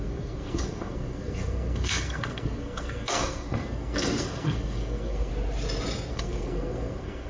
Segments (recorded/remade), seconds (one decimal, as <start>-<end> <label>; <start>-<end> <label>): 0.0-5.3 remade; 5.3-6.1 recorded; 6.1-7.3 remade